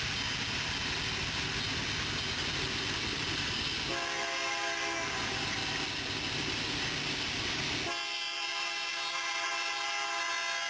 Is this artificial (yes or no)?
no